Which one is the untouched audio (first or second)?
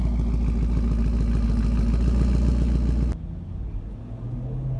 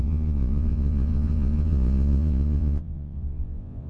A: first